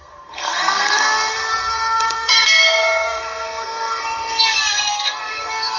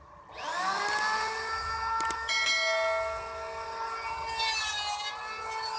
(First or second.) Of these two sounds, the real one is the second